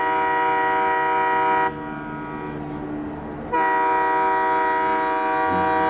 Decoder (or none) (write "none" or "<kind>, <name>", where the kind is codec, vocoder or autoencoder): none